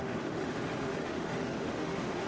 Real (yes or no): no